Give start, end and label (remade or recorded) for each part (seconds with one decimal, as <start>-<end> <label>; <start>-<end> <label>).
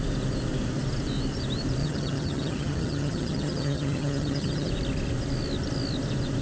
0.0-1.8 recorded; 1.8-4.7 remade; 4.7-6.4 recorded